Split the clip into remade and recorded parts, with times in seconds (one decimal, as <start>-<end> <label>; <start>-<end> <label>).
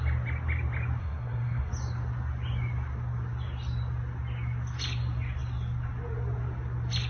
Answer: 0.0-1.0 recorded; 1.0-1.7 remade; 1.7-7.1 recorded